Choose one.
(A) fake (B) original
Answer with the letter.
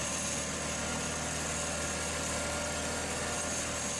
B